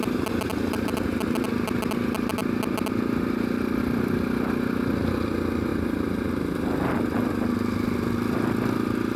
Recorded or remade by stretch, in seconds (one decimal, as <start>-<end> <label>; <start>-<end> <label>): 0.0-9.2 recorded